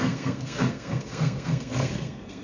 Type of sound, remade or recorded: remade